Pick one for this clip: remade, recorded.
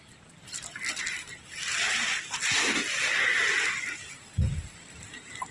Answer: recorded